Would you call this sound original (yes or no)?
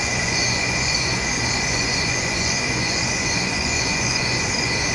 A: no